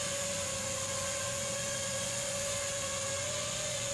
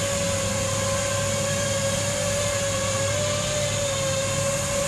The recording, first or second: second